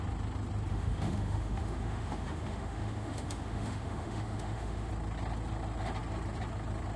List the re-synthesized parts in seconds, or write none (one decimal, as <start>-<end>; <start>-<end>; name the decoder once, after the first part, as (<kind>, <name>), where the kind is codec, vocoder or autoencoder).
0.7-4.9 (autoencoder, DAC-VAE)